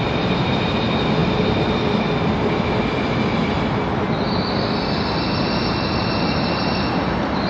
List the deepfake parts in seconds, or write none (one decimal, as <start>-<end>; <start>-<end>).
none

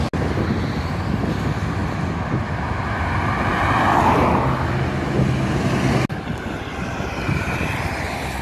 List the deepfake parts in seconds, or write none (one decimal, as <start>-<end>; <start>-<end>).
none